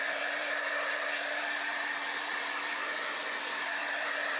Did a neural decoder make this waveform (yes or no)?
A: yes